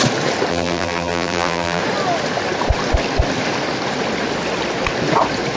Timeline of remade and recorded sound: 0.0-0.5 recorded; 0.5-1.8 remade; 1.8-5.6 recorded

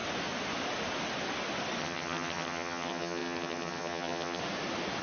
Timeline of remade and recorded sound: 0.0-1.8 recorded; 1.8-4.4 remade; 4.4-5.0 recorded